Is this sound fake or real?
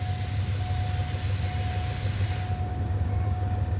real